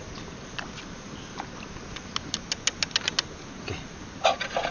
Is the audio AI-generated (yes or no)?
no